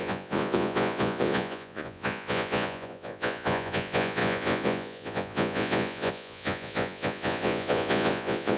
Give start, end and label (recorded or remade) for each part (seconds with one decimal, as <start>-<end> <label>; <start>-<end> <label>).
0.0-8.6 remade